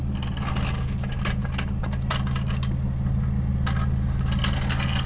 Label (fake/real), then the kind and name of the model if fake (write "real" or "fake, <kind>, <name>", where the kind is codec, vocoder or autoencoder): real